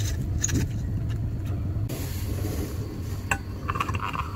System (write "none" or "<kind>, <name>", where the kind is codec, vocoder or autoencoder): none